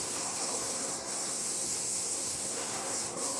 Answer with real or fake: fake